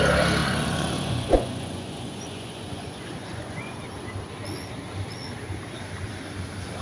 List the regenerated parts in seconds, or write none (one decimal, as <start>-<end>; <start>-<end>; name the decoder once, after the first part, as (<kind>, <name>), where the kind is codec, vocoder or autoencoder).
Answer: 0.4-3.8 (vocoder, Vocos)